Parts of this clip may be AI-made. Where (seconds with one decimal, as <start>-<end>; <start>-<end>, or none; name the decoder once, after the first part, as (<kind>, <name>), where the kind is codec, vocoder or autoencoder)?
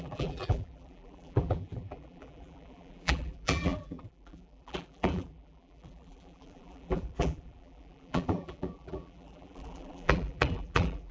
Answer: 0.0-11.1 (vocoder, BigVGAN v2)